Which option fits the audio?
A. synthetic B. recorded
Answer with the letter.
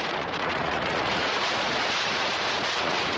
A